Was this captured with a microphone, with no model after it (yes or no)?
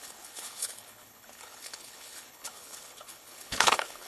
no